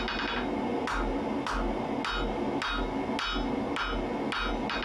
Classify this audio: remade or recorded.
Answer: recorded